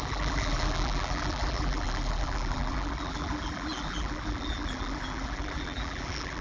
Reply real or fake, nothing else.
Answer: fake